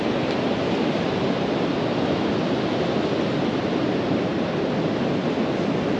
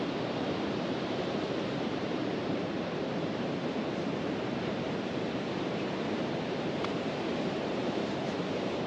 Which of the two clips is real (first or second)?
first